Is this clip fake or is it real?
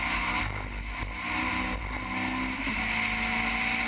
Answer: real